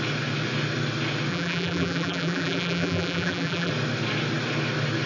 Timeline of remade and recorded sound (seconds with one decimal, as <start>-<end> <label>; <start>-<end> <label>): 0.0-1.3 recorded; 1.3-3.7 remade; 3.7-5.1 recorded